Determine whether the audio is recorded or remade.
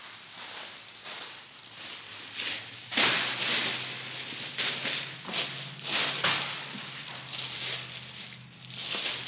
recorded